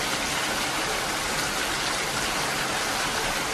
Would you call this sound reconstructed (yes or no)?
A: no